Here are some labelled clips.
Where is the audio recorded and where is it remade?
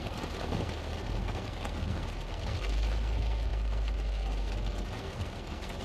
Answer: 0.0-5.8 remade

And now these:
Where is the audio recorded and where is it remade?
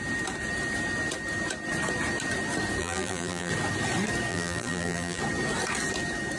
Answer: 0.0-2.8 recorded; 2.8-3.5 remade; 3.5-4.3 recorded; 4.3-5.2 remade; 5.2-6.4 recorded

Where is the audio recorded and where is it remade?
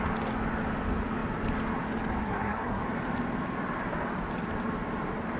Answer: 0.0-2.2 recorded; 2.2-2.8 remade; 2.8-5.4 recorded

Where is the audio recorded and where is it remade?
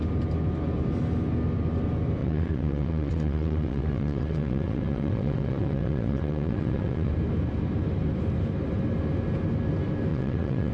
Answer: 0.0-2.2 recorded; 2.2-7.1 remade; 7.1-10.1 recorded; 10.1-10.7 remade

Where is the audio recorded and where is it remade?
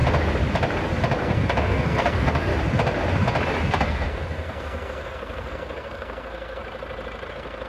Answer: 0.0-1.2 recorded; 1.2-2.5 remade; 2.5-3.7 recorded; 3.7-6.6 remade; 6.6-7.3 recorded; 7.3-7.7 remade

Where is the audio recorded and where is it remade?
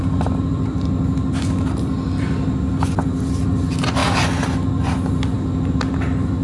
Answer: 0.0-6.4 recorded